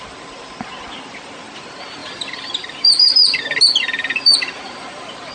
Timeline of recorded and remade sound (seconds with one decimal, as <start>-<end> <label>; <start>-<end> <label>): 0.0-2.0 recorded; 2.0-5.3 remade